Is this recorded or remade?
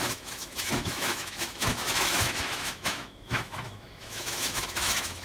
remade